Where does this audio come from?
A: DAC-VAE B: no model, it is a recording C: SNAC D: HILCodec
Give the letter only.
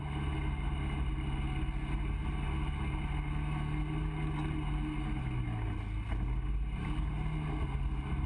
B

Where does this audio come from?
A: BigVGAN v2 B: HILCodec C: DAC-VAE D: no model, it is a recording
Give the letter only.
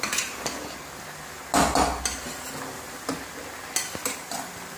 D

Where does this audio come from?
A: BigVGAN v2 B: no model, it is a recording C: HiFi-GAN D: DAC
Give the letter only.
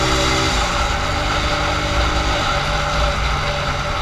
B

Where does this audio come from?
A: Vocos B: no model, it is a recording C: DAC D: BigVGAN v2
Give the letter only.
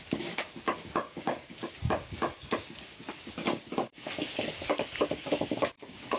C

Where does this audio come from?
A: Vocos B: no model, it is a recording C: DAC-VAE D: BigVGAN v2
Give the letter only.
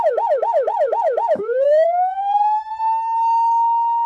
C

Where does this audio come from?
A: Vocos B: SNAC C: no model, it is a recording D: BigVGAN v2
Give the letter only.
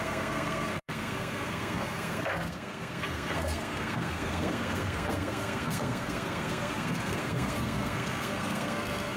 B